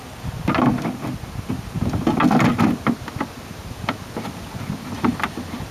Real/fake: real